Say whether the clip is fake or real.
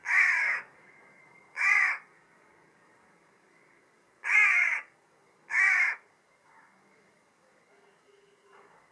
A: fake